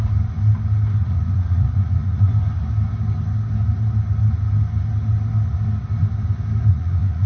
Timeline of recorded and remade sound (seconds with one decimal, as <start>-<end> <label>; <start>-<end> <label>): 0.0-1.0 recorded; 1.0-2.3 remade; 2.3-6.7 recorded; 6.7-7.3 remade